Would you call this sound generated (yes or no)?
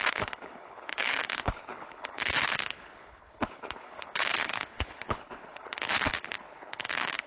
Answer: yes